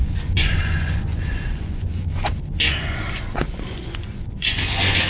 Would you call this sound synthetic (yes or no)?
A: yes